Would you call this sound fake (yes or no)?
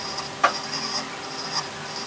no